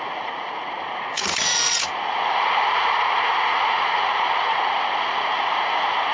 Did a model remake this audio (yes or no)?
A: yes